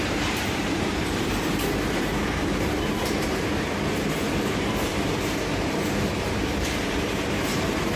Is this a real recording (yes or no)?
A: no